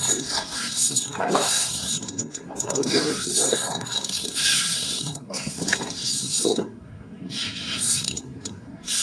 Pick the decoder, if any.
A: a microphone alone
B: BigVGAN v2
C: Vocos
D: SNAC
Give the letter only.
D